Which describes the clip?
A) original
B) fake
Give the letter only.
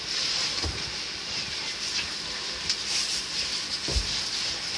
A